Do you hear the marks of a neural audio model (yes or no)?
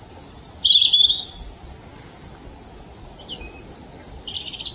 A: no